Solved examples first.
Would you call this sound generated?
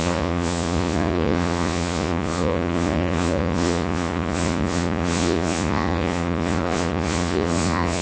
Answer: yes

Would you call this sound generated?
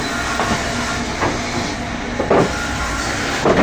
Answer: no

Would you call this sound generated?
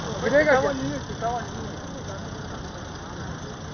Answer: no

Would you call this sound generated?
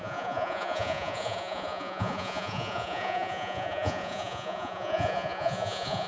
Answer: yes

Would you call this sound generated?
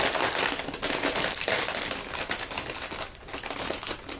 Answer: no